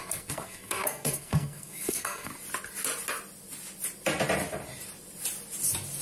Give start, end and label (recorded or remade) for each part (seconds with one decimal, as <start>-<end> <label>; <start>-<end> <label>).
0.0-2.3 remade; 2.3-6.0 recorded